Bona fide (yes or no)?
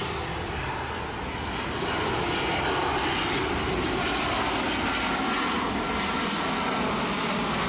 yes